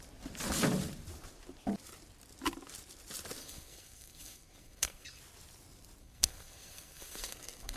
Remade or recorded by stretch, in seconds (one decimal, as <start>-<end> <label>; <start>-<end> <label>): 0.0-3.4 recorded; 3.4-5.2 remade; 5.2-6.0 recorded; 6.0-7.8 remade